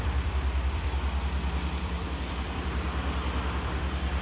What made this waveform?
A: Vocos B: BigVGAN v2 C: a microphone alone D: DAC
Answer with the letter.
B